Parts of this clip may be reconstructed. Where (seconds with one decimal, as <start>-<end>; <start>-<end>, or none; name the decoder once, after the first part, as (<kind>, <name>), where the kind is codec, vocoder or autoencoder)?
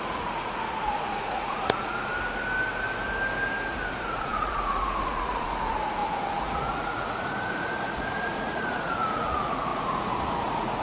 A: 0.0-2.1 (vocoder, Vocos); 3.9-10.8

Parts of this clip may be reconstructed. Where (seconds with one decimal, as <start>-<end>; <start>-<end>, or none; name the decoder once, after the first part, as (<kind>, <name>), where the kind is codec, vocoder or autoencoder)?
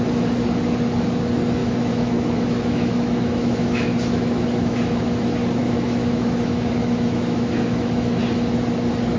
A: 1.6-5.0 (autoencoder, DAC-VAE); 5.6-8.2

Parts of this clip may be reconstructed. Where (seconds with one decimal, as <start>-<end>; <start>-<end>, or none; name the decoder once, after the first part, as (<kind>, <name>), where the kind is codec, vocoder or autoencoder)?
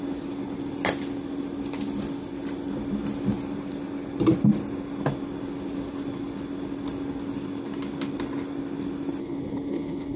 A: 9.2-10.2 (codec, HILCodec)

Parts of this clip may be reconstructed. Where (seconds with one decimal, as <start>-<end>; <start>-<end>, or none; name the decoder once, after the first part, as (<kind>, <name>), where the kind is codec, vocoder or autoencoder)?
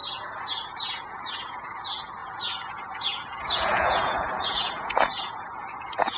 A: 0.0-6.2 (vocoder, Vocos)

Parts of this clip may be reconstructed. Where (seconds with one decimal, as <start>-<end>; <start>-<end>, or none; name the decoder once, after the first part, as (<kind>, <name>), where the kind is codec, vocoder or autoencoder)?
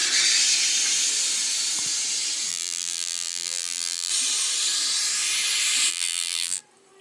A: 2.5-4.1 (vocoder, BigVGAN v2); 5.9-6.6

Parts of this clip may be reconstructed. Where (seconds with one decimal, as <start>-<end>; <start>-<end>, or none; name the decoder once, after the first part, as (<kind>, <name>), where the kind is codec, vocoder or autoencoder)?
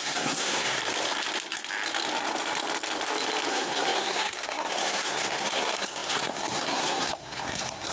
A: 0.0-0.8 (codec, SNAC); 3.5-7.9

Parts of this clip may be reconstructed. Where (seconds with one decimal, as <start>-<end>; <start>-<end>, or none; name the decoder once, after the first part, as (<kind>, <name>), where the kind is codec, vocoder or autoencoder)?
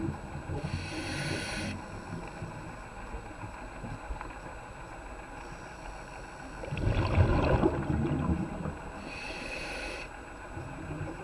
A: none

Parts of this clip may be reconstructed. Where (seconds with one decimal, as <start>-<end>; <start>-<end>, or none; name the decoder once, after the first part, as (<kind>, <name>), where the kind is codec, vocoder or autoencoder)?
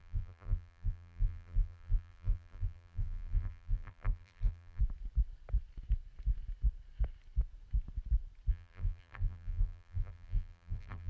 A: 0.0-4.8 (vocoder, BigVGAN v2); 8.5-11.1